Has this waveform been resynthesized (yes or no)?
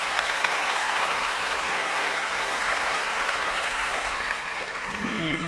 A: yes